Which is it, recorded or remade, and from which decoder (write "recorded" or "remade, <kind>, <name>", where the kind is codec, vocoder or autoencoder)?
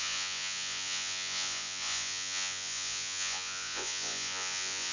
remade, vocoder, Vocos